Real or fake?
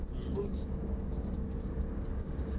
fake